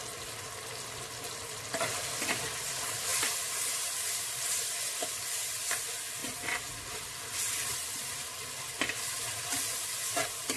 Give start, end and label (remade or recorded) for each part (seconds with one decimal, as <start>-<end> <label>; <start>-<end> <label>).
0.0-10.6 recorded